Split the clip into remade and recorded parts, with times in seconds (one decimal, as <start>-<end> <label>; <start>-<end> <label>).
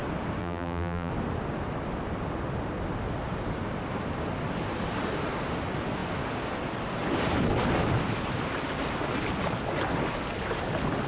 0.0-0.4 recorded; 0.4-1.1 remade; 1.1-11.1 recorded